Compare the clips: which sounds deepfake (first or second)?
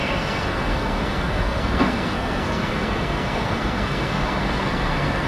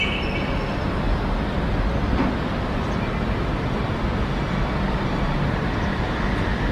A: first